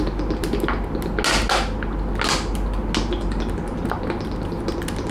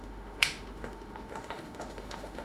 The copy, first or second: second